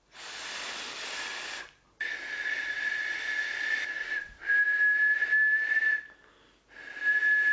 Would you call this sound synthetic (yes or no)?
no